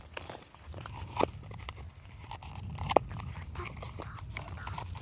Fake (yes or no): no